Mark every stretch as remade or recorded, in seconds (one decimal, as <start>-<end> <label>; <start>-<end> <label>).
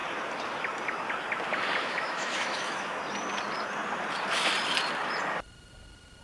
0.0-1.8 recorded; 1.8-3.0 remade; 3.0-6.2 recorded